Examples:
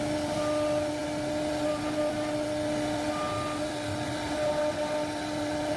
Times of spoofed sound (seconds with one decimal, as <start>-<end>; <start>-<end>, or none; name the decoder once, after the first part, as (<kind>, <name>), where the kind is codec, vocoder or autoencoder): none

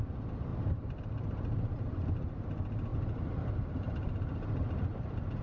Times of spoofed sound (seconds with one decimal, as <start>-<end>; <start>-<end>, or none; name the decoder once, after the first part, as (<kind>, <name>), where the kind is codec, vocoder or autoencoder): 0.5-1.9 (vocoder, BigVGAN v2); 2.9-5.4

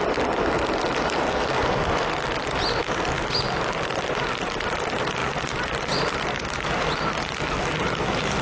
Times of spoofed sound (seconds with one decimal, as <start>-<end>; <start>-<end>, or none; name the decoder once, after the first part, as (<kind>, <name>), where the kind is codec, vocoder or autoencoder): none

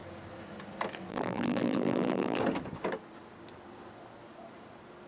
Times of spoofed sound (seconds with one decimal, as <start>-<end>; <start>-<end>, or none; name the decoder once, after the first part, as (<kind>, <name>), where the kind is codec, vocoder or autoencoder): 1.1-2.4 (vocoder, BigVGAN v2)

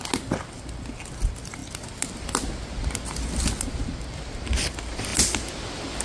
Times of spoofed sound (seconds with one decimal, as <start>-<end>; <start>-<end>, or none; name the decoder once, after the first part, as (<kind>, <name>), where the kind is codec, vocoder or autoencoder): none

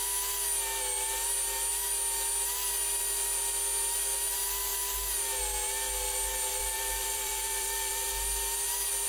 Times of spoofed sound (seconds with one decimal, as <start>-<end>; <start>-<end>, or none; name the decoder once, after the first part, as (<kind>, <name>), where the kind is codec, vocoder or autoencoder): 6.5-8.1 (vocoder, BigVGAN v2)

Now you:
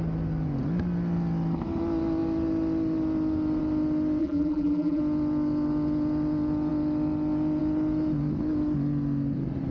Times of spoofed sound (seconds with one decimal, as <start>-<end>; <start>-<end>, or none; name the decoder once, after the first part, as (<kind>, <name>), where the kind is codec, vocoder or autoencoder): 4.2-5.0 (vocoder, BigVGAN v2)

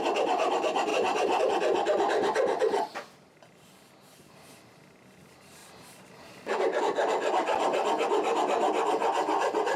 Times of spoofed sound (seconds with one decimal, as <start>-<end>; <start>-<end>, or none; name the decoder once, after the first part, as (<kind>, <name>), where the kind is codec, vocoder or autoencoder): 5.6-6.8 (vocoder, BigVGAN v2)